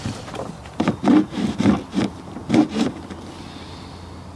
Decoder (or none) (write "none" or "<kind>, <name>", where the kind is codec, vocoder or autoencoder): none